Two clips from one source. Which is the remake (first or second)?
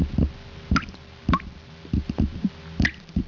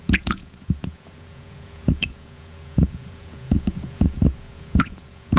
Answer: second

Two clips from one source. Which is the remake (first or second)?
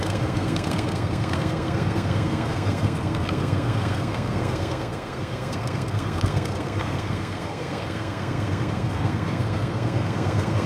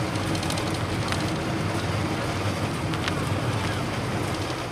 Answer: first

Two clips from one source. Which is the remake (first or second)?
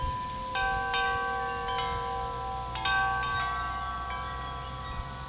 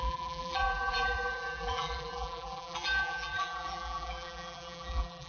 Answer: second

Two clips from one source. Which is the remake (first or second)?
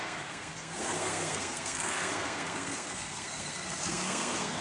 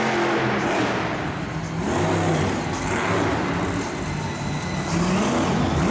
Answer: first